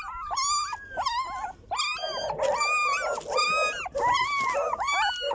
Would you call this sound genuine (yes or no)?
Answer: yes